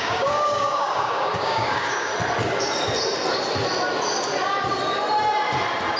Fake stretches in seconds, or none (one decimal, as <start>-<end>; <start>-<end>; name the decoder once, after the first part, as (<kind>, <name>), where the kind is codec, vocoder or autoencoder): 0.0-2.1 (codec, DAC)